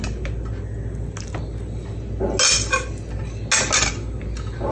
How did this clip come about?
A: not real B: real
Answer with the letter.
B